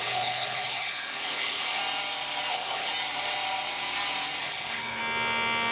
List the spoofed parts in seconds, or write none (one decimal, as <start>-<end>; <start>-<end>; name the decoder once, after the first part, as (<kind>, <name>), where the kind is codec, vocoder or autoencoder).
0.0-1.8 (codec, HILCodec); 2.5-2.9; 4.4-5.0